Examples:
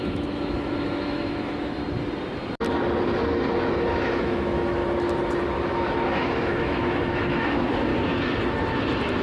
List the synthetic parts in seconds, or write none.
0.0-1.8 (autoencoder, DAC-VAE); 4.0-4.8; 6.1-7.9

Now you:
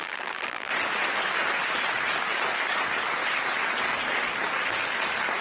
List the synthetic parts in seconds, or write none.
0.0-0.7 (vocoder, BigVGAN v2)

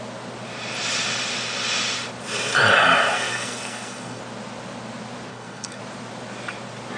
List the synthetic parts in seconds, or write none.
3.1-4.2 (codec, SNAC); 5.3-5.8

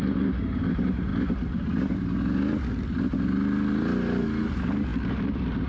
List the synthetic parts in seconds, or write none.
0.0-1.1 (vocoder, BigVGAN v2); 4.4-5.7

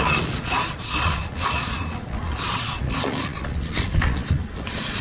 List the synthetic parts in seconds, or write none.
0.0-5.0 (vocoder, Vocos)